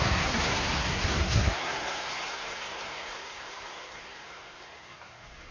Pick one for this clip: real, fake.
fake